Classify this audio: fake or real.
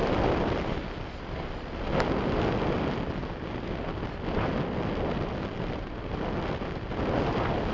real